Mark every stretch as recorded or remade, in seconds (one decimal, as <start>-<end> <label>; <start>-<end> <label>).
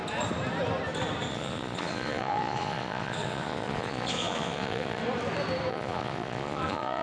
0.0-1.3 recorded; 1.3-5.0 remade; 5.0-5.7 recorded; 5.7-7.0 remade